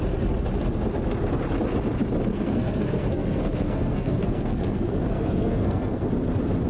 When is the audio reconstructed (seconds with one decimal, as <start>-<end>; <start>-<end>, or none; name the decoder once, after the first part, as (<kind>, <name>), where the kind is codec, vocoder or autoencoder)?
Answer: 2.3-6.1 (codec, SNAC)

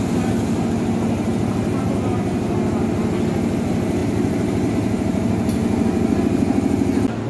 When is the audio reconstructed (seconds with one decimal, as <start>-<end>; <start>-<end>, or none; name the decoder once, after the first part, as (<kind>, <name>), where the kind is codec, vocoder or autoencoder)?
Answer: none